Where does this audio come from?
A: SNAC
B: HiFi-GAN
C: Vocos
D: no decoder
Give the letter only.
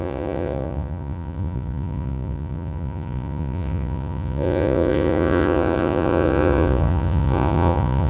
C